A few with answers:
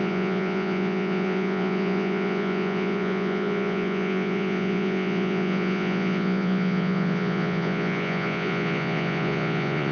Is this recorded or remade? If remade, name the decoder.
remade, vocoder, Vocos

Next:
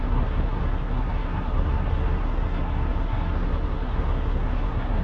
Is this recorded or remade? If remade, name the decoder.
remade, codec, SNAC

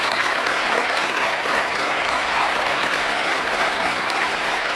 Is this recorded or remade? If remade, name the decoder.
remade, codec, SNAC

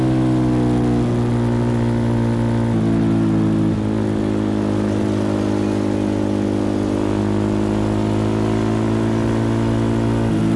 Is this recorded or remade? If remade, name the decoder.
recorded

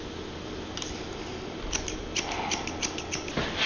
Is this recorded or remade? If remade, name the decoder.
recorded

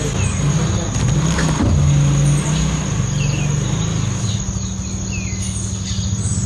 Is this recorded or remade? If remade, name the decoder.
recorded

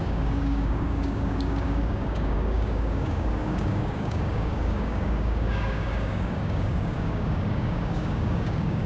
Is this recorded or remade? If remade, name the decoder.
remade, codec, DAC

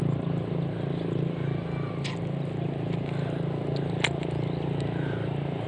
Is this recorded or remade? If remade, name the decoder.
recorded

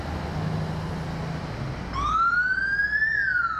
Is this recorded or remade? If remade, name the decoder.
recorded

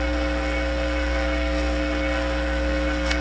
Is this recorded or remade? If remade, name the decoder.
remade, codec, SNAC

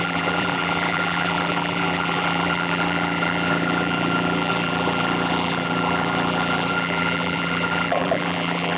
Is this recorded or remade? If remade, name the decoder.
remade, vocoder, BigVGAN v2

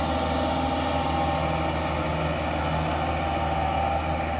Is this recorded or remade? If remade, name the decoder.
recorded